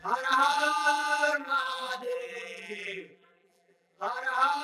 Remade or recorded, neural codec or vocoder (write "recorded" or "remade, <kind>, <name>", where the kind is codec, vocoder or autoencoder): remade, vocoder, BigVGAN v2